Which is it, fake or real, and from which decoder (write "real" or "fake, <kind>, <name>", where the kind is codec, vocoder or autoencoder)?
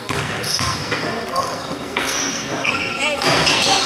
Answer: fake, codec, SNAC